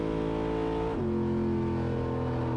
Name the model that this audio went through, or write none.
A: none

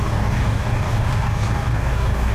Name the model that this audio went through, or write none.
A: codec, DAC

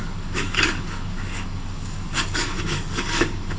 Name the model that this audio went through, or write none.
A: codec, DAC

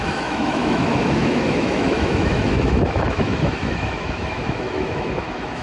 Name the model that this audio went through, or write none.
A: autoencoder, DAC-VAE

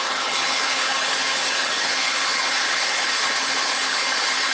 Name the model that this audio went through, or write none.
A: codec, HILCodec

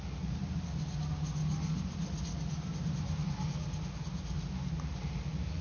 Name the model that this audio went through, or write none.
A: none